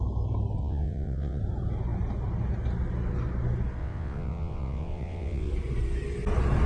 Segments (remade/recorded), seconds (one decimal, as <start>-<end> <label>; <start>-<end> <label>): 0.0-0.6 recorded; 0.6-1.4 remade; 1.4-3.8 recorded; 3.8-5.5 remade; 5.5-6.7 recorded